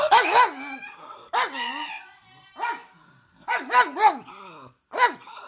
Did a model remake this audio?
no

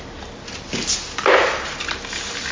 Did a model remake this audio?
no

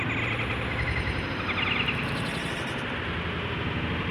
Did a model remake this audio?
no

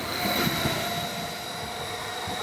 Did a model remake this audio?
yes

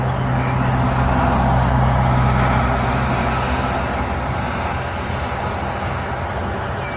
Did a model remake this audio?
no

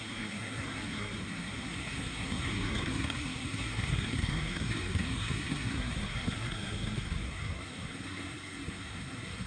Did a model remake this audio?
yes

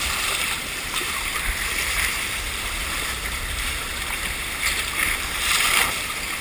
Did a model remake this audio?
yes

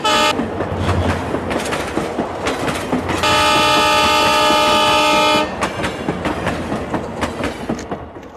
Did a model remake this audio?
no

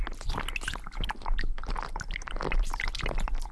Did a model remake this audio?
no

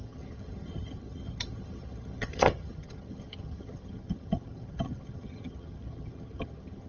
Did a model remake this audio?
yes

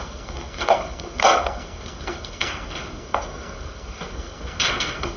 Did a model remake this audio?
yes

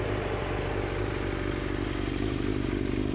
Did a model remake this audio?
no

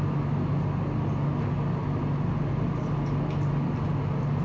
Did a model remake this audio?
no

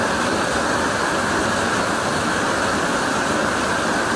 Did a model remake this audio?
no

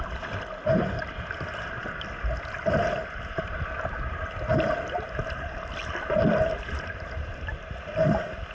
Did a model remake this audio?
no